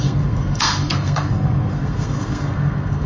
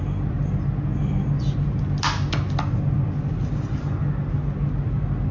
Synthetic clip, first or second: first